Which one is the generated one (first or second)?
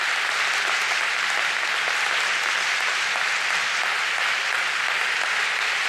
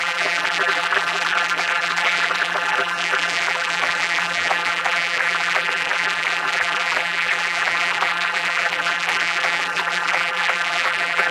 second